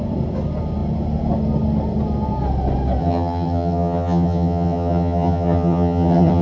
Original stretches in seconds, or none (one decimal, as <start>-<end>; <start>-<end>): 0.0-3.0